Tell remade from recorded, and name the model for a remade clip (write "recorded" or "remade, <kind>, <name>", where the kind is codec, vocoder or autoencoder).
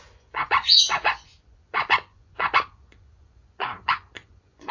remade, vocoder, Vocos